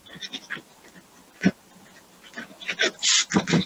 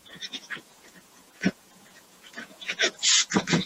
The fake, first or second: second